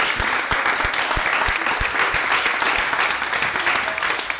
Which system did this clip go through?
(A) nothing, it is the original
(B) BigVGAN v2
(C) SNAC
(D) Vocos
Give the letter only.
A